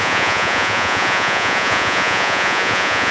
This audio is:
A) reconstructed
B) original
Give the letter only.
A